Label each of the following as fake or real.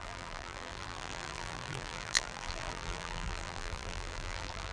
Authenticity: fake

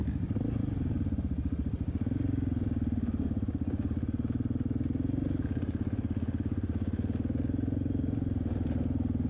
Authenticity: real